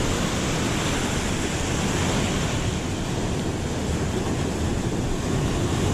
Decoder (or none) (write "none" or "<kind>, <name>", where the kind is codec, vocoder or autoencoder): none